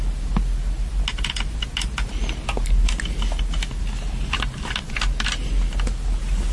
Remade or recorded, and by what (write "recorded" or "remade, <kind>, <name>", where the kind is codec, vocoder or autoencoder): recorded